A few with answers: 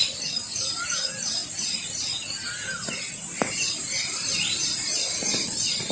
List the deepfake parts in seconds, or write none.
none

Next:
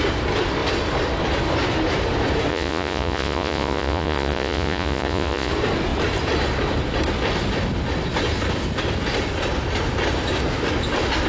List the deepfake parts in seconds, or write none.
2.5-5.5 (vocoder, Vocos)

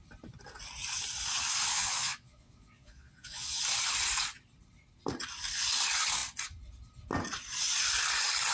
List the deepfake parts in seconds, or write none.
1.7-3.6 (vocoder, Vocos)